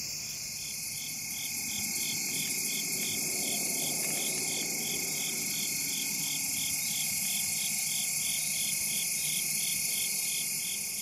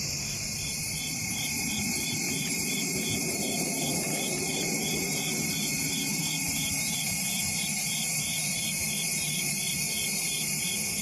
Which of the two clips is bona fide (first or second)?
first